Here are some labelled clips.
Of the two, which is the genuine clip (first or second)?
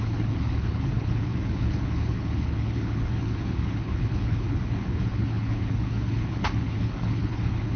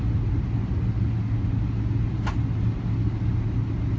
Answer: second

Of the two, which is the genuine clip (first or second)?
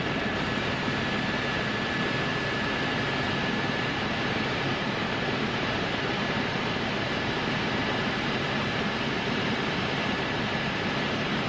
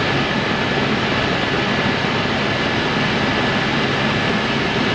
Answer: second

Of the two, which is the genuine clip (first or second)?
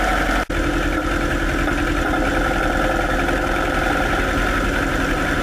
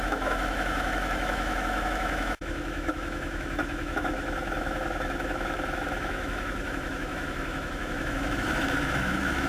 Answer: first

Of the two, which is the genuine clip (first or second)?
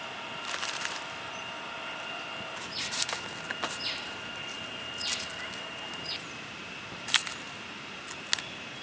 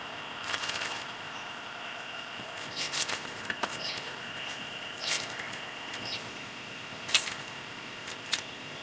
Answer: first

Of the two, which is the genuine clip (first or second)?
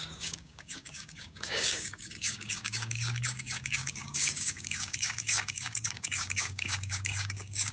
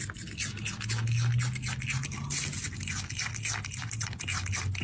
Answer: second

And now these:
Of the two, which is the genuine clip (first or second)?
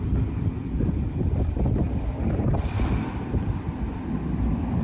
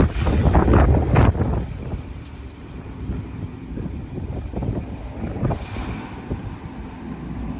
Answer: second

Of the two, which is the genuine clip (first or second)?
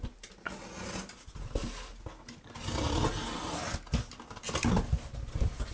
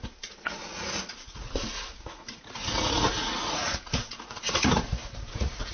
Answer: first